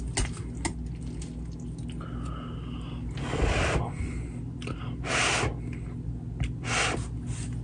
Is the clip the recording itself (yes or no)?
yes